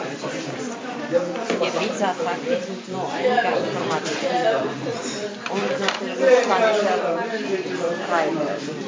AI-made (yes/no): yes